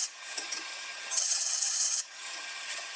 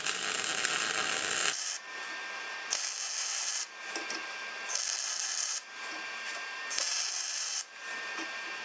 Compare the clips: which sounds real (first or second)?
second